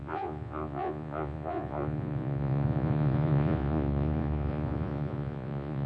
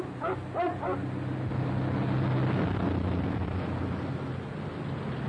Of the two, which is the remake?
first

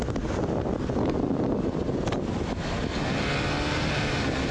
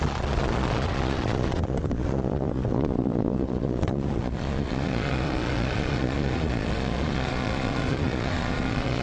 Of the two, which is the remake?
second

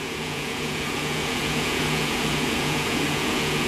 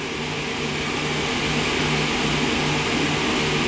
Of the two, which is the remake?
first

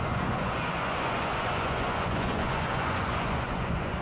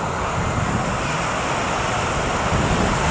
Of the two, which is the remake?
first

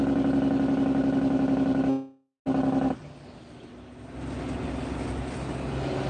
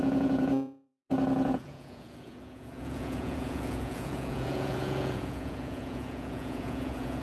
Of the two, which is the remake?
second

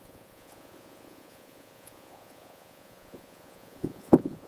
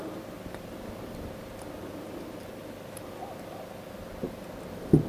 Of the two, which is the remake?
first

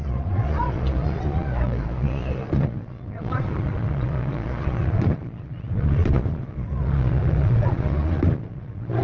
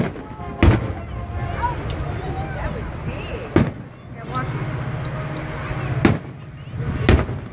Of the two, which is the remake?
first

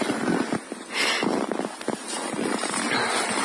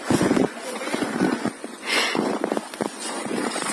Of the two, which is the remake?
second